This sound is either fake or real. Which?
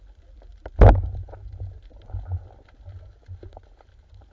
real